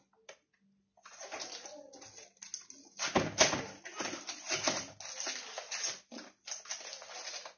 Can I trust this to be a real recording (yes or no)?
yes